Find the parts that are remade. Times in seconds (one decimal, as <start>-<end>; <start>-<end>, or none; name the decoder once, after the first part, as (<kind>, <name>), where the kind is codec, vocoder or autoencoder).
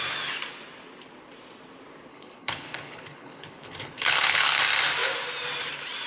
2.1-4.6 (codec, HILCodec)